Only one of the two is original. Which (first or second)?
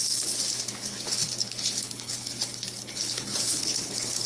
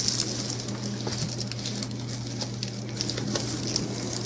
second